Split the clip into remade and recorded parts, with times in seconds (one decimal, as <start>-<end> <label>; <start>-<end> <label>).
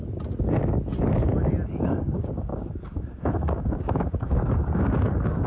0.0-1.8 recorded; 1.8-5.5 remade